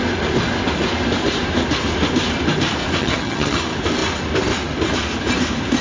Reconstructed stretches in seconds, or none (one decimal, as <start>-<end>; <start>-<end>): 3.0-3.6